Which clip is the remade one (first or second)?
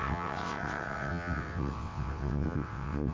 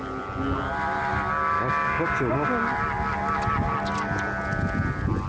first